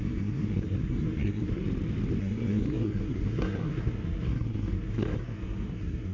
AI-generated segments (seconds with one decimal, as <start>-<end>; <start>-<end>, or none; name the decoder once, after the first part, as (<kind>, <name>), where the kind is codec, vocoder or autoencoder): 0.0-1.6 (codec, SNAC); 2.2-6.1